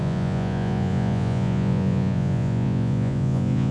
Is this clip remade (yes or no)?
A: yes